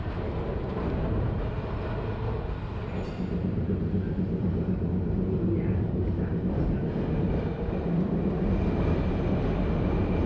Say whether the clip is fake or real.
real